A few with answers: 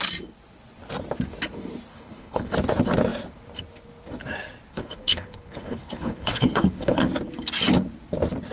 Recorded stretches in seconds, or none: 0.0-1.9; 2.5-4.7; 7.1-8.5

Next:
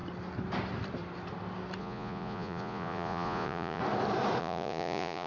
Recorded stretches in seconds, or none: 0.0-1.8; 3.8-4.4

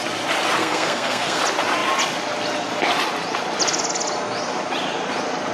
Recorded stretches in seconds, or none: 0.0-0.6; 1.4-5.5

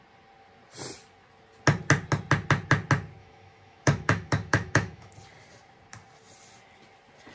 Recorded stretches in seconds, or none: 0.0-3.2; 5.1-7.3

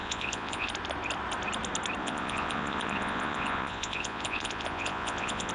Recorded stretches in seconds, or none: 0.7-2.0

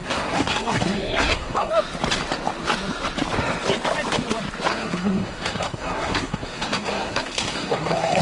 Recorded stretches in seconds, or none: 1.7-4.7

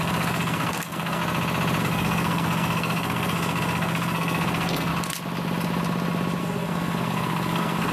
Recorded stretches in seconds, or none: 1.2-1.8; 4.9-6.4

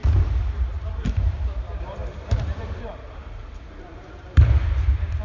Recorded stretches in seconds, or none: 0.0-0.5